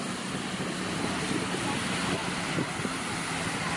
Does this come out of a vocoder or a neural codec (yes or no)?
no